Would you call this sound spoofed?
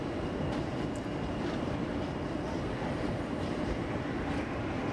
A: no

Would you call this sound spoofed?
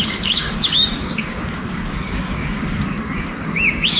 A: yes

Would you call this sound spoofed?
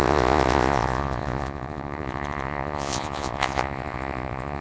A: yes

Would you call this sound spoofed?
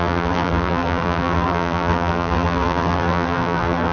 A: yes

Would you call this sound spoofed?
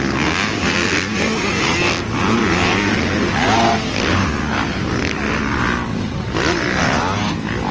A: no